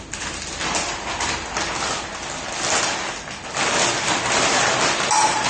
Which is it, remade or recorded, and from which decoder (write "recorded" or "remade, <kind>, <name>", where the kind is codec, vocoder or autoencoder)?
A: recorded